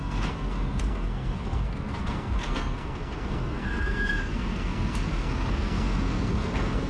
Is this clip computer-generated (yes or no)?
yes